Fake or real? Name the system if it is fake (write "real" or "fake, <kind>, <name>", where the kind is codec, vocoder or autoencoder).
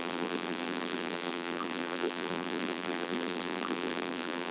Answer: fake, vocoder, BigVGAN v2